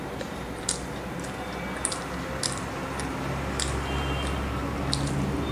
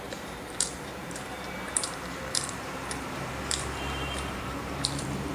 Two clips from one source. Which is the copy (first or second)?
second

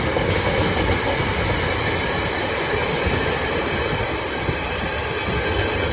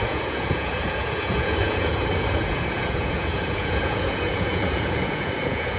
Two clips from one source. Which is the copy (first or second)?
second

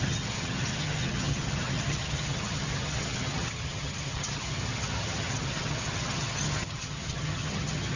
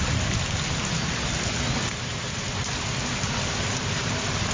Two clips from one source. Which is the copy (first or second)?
first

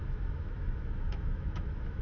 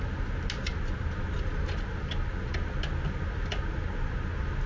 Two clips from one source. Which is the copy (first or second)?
first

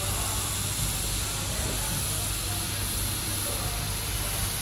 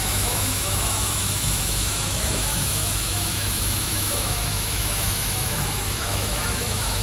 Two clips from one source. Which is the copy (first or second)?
second